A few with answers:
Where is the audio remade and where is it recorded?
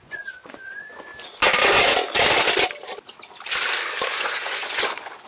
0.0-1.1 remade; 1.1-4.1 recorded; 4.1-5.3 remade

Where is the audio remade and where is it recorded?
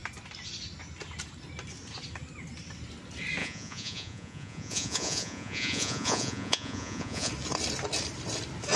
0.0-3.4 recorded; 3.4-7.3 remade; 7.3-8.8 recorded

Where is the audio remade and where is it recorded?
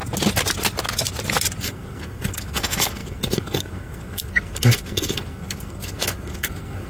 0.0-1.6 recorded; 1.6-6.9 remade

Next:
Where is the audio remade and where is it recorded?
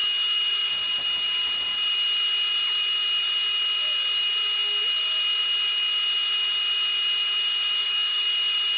0.0-0.7 remade; 0.7-7.8 recorded; 7.8-8.3 remade; 8.3-8.8 recorded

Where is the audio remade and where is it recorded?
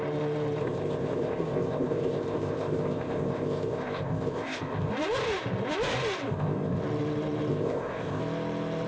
0.0-0.6 recorded; 0.6-4.9 remade; 4.9-6.3 recorded; 6.3-6.8 remade; 6.8-7.5 recorded; 7.5-8.2 remade; 8.2-8.9 recorded